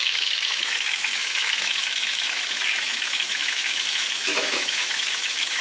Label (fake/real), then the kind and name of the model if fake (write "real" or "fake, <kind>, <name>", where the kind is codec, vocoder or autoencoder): fake, autoencoder, DAC-VAE